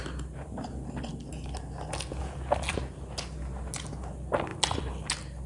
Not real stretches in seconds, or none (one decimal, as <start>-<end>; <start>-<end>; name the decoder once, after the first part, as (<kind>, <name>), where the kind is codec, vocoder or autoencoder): 4.5-5.1 (vocoder, BigVGAN v2)